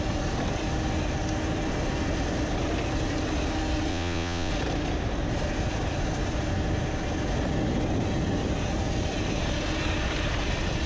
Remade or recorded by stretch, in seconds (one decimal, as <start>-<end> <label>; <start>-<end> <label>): 0.0-3.9 recorded; 3.9-4.5 remade; 4.5-10.9 recorded

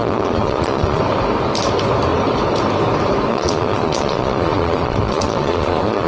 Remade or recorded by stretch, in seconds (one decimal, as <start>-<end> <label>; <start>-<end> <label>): 0.0-1.0 remade; 1.0-3.3 recorded; 3.3-6.1 remade

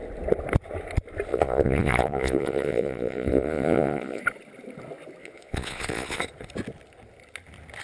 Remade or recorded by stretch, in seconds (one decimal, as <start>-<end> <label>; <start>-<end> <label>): 0.0-1.3 recorded; 1.3-4.2 remade; 4.2-5.2 recorded; 5.2-6.2 remade; 6.2-7.8 recorded